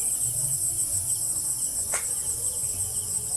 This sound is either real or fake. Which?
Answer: fake